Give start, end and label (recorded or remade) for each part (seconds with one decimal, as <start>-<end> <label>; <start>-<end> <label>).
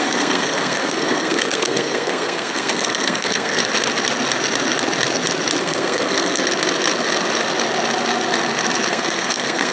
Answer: 0.0-3.6 remade; 3.6-5.6 recorded; 5.6-6.4 remade; 6.4-8.9 recorded; 8.9-9.7 remade